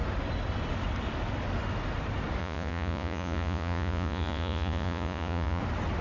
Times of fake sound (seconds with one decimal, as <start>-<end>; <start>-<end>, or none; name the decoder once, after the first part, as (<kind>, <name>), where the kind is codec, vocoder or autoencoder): 2.4-5.6 (vocoder, Vocos)